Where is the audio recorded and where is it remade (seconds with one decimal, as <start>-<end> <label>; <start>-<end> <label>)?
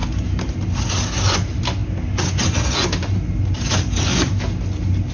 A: 0.0-5.1 recorded